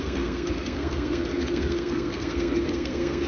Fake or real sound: fake